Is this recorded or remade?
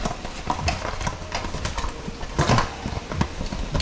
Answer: recorded